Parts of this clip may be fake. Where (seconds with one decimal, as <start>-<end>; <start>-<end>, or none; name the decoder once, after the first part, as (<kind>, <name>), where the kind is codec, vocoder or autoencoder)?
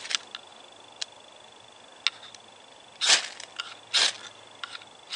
none